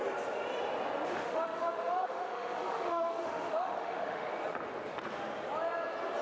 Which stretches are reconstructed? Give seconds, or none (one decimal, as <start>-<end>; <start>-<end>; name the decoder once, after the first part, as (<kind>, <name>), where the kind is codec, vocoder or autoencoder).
1.2-4.3 (autoencoder, DAC-VAE)